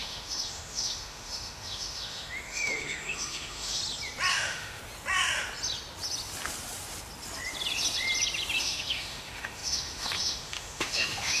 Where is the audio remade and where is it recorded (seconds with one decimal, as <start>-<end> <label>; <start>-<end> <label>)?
0.0-3.8 remade; 3.8-4.3 recorded; 4.3-4.8 remade; 4.8-8.6 recorded; 8.6-11.4 remade